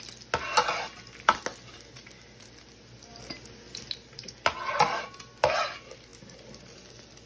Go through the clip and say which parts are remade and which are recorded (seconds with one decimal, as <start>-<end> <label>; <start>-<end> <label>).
0.0-7.3 recorded